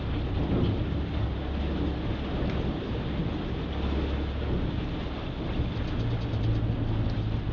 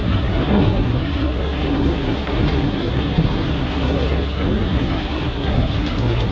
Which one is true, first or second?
first